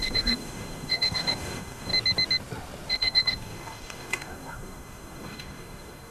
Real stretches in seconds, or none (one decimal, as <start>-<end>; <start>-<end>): 1.9-2.9